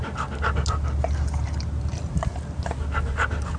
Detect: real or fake real